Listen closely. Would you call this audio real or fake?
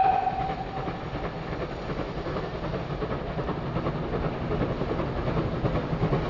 real